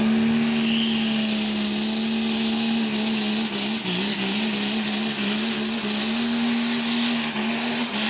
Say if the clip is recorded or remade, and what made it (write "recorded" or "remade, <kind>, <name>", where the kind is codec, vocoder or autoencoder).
recorded